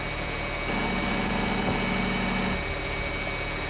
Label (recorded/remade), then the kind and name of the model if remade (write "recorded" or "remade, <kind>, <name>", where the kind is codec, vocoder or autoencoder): recorded